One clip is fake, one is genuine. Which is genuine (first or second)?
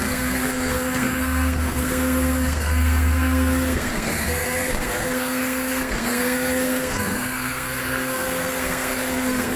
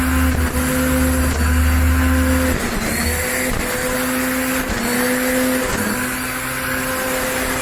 second